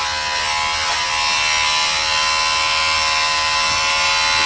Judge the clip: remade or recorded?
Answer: recorded